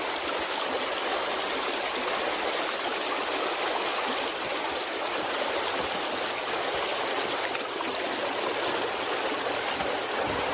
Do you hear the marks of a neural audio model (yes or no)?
no